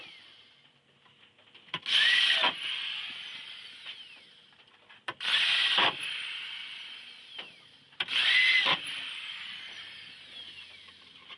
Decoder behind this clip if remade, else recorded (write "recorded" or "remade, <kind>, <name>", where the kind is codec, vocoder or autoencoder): recorded